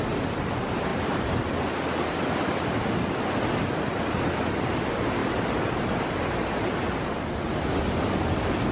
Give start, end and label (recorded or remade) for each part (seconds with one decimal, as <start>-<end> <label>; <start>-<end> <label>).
0.0-0.9 remade; 0.9-2.5 recorded; 2.5-5.2 remade; 5.2-8.7 recorded